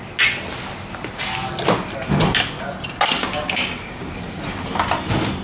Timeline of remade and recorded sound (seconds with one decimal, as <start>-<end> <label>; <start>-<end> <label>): 0.0-3.2 recorded; 3.2-4.1 remade; 4.1-5.4 recorded